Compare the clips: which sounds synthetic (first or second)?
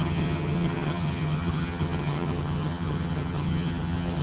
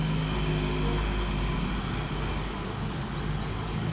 first